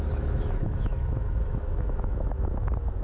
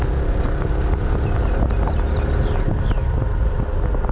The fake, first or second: first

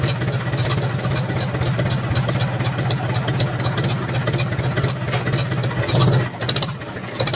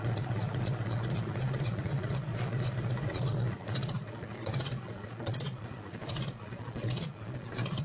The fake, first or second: second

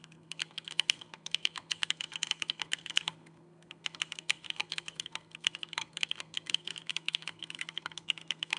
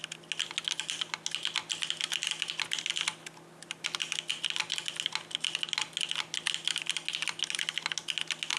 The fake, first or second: first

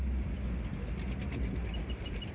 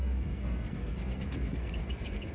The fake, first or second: second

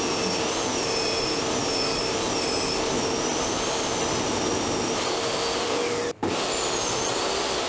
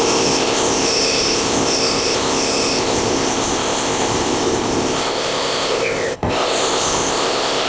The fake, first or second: second